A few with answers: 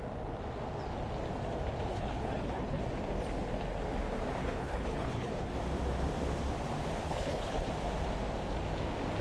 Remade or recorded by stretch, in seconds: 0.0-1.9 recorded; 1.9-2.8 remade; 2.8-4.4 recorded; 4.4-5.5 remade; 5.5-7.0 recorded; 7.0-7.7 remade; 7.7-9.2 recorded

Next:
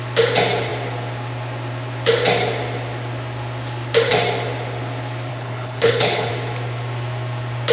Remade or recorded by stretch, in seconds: 0.0-5.3 recorded; 5.3-6.3 remade; 6.3-7.7 recorded

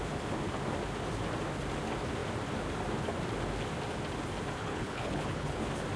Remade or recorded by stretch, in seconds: 0.0-4.6 recorded; 4.6-5.6 remade; 5.6-6.0 recorded

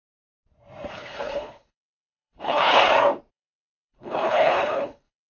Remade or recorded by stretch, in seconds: 0.0-0.9 recorded; 0.9-2.8 remade; 2.8-3.3 recorded; 3.3-5.3 remade

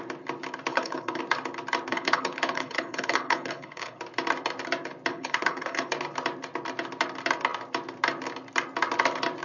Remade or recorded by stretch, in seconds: 0.0-0.7 recorded; 0.7-1.2 remade; 1.2-1.9 recorded; 1.9-4.0 remade; 4.0-5.1 recorded; 5.1-5.9 remade; 5.9-9.4 recorded

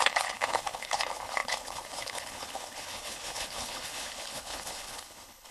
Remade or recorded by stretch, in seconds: 0.0-5.5 remade

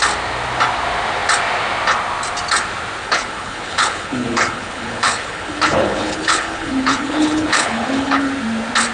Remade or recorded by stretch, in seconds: 0.0-3.0 recorded; 3.0-8.3 remade; 8.3-8.9 recorded